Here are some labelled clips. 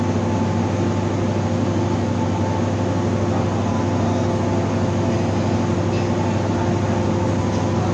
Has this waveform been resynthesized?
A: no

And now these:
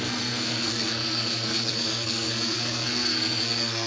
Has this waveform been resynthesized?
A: yes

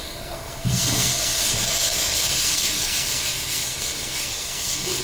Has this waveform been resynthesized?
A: yes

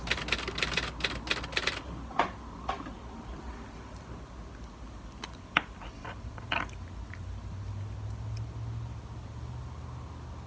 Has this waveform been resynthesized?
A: no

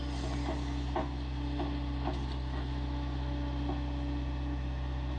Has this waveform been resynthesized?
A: no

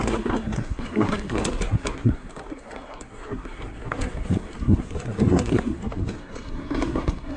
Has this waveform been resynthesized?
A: yes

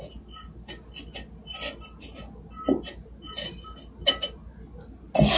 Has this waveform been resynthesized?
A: no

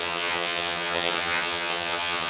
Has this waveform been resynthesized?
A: yes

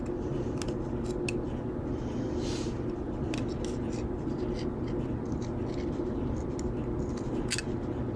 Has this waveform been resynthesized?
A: no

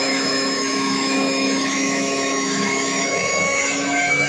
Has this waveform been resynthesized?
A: yes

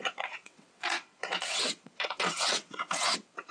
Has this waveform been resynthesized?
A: yes